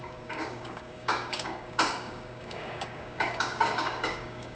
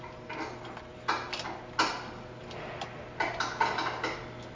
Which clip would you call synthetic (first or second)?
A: first